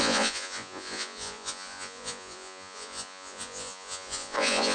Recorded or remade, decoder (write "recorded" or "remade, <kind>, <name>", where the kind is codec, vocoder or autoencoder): remade, vocoder, Vocos